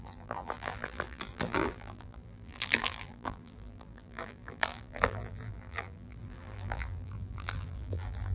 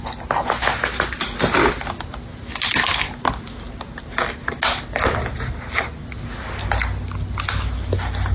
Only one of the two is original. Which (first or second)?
second